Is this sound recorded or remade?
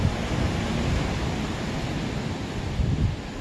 recorded